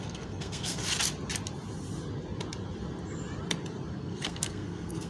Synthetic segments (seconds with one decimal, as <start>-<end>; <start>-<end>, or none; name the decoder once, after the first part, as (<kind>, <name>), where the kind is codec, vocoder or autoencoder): 0.0-0.8 (codec, SNAC); 3.9-5.1